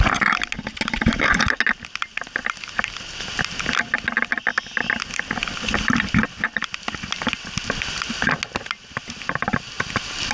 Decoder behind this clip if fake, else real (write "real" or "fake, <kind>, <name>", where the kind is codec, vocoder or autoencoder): real